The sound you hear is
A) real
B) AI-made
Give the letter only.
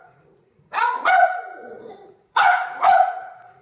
B